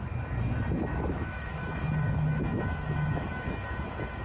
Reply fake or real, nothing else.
fake